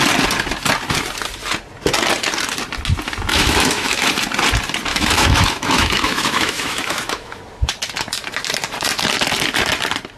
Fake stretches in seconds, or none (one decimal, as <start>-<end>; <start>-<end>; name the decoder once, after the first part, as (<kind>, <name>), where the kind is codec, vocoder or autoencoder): 3.3-4.1 (autoencoder, DAC-VAE); 4.9-7.4